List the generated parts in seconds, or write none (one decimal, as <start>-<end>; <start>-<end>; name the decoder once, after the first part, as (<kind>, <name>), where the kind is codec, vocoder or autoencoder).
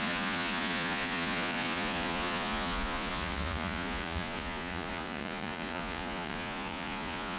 0.0-7.4 (vocoder, Vocos)